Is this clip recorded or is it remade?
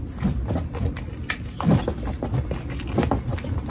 recorded